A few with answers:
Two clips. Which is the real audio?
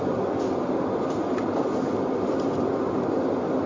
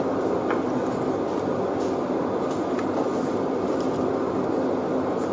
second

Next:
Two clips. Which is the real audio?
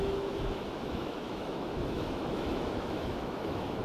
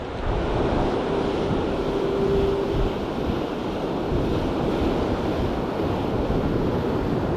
second